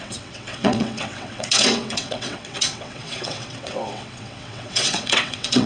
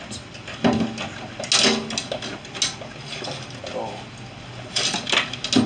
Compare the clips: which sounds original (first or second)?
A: second